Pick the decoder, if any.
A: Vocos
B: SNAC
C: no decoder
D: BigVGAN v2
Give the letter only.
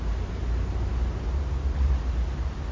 C